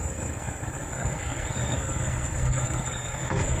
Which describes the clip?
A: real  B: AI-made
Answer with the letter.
B